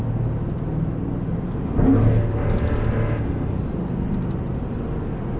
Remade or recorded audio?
recorded